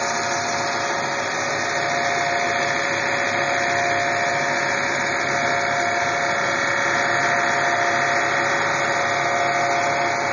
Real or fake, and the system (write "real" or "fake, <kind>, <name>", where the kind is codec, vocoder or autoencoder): real